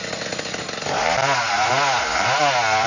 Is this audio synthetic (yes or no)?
no